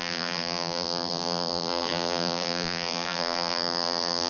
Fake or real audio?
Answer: fake